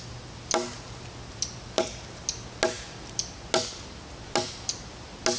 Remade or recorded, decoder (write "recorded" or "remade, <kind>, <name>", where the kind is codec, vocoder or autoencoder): recorded